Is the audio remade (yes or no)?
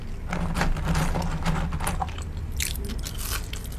no